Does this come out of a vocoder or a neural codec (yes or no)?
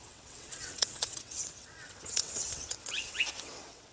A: yes